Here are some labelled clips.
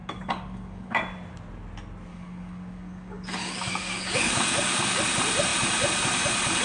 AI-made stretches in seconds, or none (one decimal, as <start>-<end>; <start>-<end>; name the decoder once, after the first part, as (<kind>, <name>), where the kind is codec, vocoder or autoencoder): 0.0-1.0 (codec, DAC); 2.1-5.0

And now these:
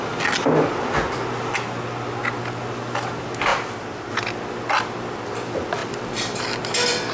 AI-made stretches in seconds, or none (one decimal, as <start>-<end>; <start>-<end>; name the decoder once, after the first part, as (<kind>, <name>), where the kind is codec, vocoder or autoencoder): 3.5-4.1 (vocoder, BigVGAN v2); 5.8-7.1

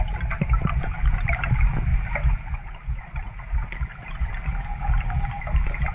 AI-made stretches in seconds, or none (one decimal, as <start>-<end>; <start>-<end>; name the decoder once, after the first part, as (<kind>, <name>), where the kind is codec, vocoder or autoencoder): none